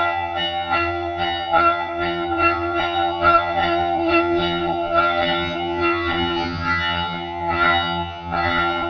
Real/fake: fake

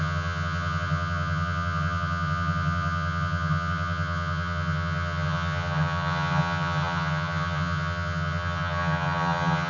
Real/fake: fake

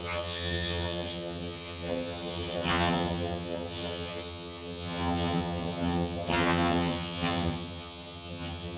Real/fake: fake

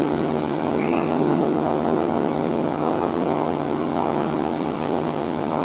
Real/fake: fake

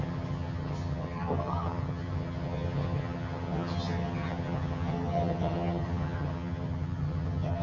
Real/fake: fake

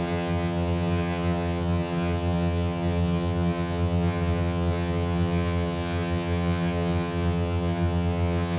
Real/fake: fake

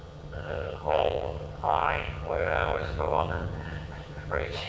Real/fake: fake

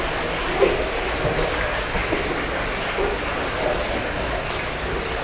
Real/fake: real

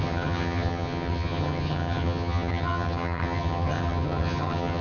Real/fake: fake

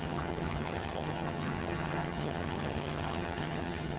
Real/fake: fake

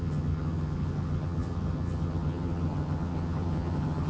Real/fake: fake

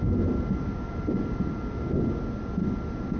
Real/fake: real